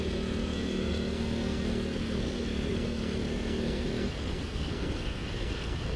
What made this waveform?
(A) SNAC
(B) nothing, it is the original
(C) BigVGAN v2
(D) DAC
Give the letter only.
A